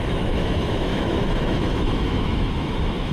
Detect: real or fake fake